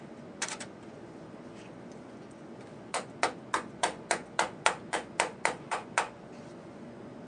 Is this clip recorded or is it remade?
remade